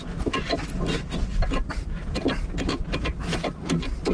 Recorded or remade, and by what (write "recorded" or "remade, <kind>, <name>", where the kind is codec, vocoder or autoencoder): recorded